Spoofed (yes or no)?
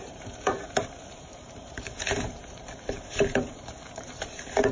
yes